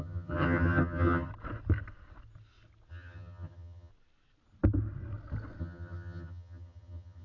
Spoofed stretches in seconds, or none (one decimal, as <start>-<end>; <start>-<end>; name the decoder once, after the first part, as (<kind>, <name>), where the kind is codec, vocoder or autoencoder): 0.0-1.3 (vocoder, HiFi-GAN); 2.9-3.9; 5.6-7.2